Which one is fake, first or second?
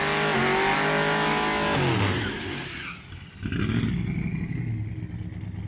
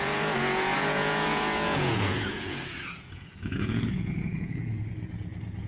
second